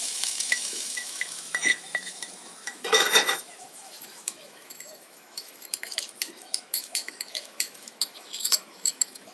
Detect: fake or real fake